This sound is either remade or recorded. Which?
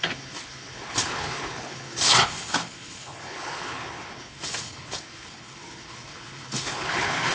remade